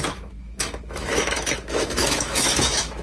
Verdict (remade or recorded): remade